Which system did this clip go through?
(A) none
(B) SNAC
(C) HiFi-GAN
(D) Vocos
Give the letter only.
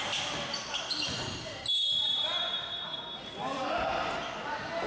A